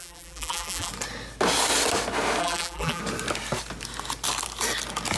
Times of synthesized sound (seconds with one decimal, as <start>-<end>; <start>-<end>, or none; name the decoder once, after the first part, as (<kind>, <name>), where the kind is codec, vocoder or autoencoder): 0.0-0.9 (vocoder, BigVGAN v2); 2.4-3.0